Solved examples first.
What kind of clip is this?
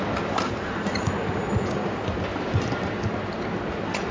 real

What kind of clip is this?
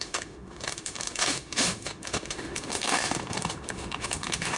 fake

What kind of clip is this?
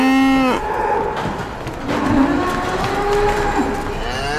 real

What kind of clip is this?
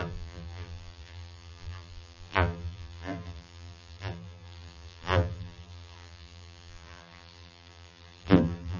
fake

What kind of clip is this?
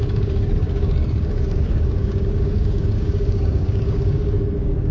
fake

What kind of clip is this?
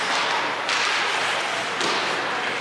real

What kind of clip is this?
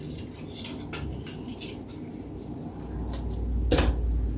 real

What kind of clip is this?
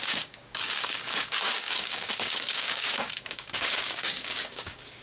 fake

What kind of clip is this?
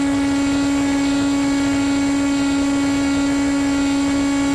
real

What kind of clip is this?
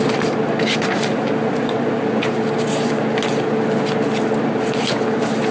real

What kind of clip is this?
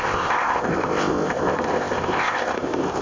fake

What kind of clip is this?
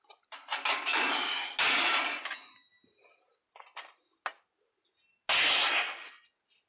real